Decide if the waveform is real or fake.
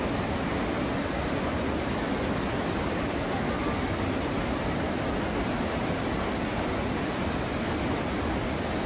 real